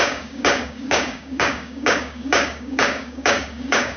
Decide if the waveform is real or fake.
fake